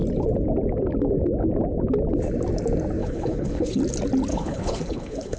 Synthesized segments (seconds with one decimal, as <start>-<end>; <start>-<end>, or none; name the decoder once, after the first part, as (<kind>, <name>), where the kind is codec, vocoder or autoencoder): 3.0-3.8 (codec, HILCodec); 4.3-5.4